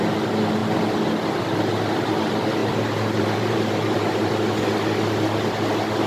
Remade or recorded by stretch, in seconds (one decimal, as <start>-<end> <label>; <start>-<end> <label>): 0.0-2.6 recorded; 2.6-4.3 remade; 4.3-6.1 recorded